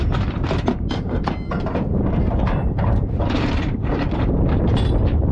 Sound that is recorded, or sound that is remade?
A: remade